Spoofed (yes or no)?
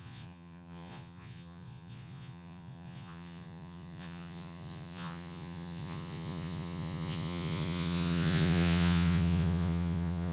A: yes